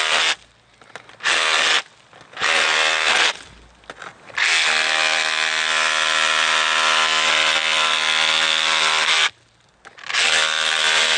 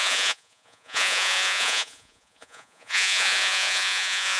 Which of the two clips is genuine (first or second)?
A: first